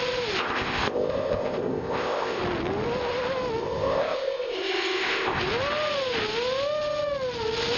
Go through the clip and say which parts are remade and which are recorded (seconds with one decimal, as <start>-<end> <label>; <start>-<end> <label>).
0.0-0.4 recorded; 0.4-2.4 remade; 2.4-3.6 recorded; 3.6-5.4 remade; 5.4-7.8 recorded